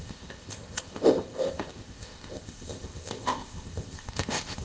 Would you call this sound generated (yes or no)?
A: yes